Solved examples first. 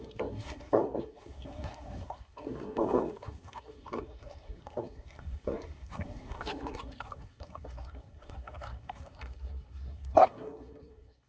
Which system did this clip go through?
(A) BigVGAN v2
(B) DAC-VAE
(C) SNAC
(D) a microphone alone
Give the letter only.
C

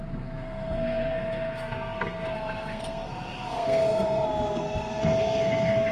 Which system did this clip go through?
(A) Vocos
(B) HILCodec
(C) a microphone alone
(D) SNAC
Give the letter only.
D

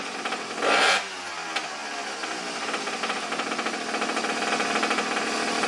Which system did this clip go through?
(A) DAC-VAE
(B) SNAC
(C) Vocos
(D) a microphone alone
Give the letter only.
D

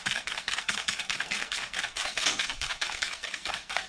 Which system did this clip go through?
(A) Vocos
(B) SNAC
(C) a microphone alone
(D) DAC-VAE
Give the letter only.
B